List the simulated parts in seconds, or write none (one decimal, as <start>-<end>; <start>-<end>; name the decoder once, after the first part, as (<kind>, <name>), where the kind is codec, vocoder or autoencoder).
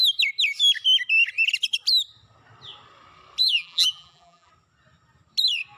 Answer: 3.4-4.5 (vocoder, BigVGAN v2)